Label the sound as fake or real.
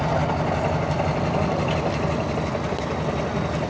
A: real